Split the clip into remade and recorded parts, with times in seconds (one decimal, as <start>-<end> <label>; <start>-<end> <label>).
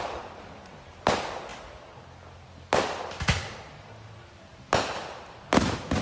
0.0-6.0 recorded